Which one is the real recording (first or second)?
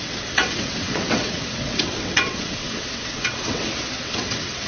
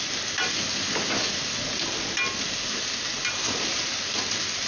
second